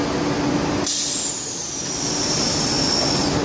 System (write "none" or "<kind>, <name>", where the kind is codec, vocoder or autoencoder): none